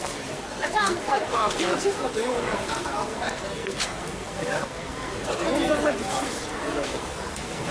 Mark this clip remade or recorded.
remade